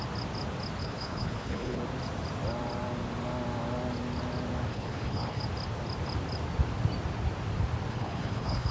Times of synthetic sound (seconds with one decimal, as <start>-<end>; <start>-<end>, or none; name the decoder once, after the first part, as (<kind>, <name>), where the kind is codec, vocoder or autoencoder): 0.8-1.8 (codec, HILCodec); 4.7-5.4; 7.9-8.7